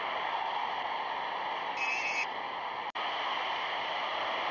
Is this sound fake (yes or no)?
no